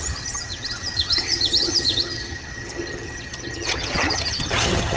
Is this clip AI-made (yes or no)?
yes